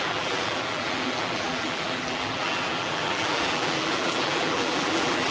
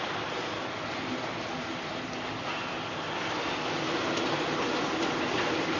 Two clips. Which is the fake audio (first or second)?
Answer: first